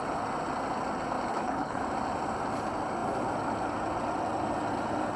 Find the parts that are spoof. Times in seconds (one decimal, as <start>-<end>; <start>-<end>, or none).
1.3-1.8